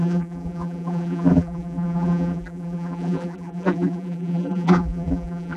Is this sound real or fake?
fake